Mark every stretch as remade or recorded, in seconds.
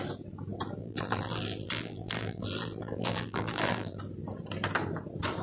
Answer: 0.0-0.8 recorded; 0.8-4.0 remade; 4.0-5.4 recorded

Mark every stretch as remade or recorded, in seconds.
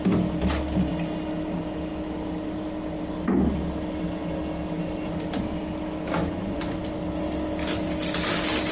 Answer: 0.0-6.2 recorded; 6.2-6.8 remade; 6.8-8.7 recorded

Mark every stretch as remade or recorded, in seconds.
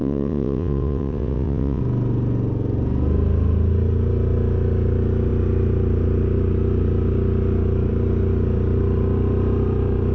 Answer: 0.0-1.8 remade; 1.8-10.1 recorded